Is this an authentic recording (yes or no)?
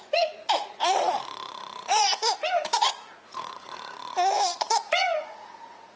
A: no